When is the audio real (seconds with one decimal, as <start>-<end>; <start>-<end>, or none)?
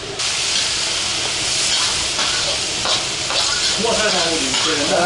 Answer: 0.0-5.1